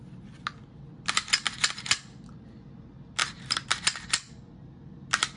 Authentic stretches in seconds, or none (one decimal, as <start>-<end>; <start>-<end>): 0.0-5.4